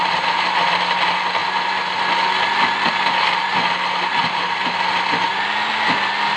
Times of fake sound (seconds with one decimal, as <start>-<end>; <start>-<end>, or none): none